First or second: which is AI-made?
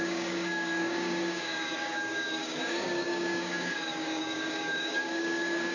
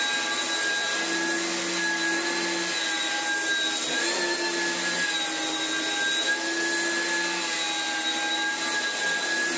first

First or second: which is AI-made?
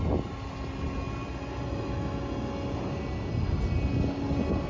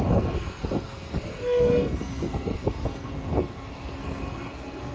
second